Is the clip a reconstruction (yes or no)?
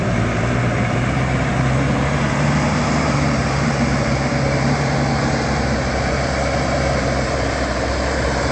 yes